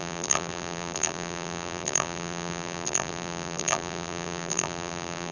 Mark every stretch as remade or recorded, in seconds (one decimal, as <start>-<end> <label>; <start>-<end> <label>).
0.0-5.3 remade